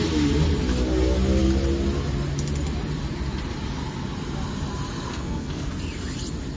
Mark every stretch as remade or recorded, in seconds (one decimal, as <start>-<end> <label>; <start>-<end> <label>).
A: 0.0-5.1 recorded; 5.1-5.7 remade; 5.7-6.6 recorded